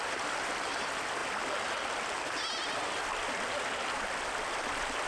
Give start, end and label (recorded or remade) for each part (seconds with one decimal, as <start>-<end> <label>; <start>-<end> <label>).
0.0-5.1 recorded